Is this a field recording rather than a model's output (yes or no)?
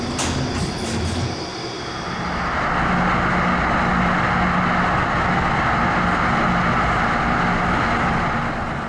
yes